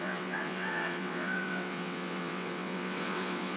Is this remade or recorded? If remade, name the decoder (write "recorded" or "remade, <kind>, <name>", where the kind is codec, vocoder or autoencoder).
remade, vocoder, WaveNeXt